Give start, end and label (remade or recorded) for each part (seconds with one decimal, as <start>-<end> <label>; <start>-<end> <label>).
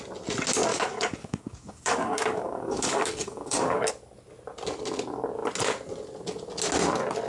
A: 0.0-0.7 recorded; 0.7-3.9 remade; 3.9-7.3 recorded